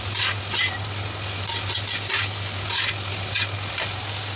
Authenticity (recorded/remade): recorded